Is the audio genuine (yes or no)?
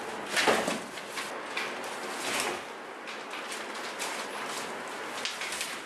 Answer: yes